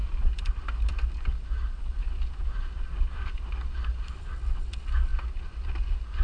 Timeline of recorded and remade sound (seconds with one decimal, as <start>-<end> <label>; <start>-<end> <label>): 0.0-6.2 recorded